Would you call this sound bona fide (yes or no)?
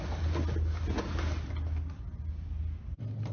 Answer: yes